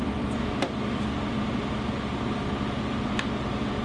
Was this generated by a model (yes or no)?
no